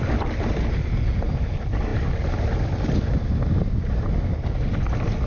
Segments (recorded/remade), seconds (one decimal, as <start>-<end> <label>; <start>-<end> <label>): 0.0-5.3 recorded